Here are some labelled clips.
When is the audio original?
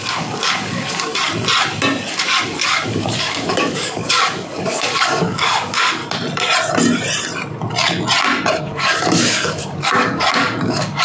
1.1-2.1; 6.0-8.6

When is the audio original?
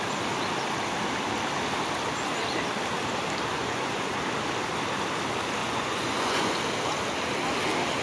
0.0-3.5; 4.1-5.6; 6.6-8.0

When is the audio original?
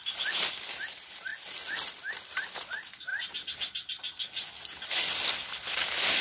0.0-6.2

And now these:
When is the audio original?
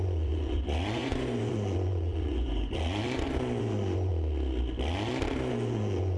3.0-3.6; 4.1-5.5